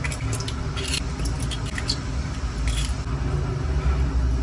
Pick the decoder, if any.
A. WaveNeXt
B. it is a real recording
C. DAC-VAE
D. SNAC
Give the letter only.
B